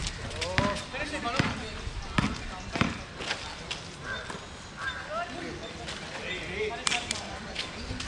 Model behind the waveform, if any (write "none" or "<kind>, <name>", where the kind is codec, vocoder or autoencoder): none